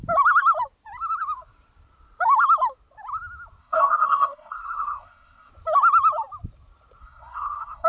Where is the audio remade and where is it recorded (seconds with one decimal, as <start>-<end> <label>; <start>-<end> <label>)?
0.0-3.6 recorded; 3.6-5.5 remade; 5.5-7.0 recorded; 7.0-7.9 remade